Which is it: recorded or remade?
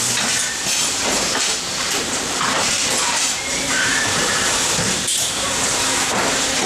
remade